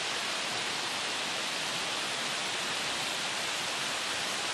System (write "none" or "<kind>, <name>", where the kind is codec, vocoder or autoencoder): none